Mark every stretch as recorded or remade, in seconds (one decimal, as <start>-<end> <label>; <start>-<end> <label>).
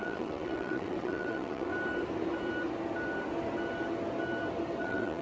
0.0-1.7 remade; 1.7-4.8 recorded; 4.8-5.2 remade